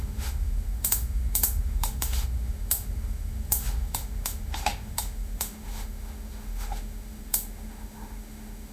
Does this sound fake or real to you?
fake